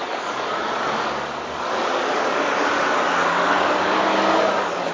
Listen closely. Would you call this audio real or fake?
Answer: fake